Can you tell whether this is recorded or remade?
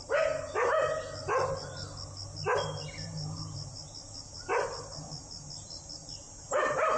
recorded